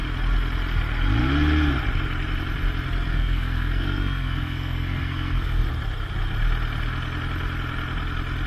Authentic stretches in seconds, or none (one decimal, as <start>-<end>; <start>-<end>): 0.0-3.1; 5.6-8.5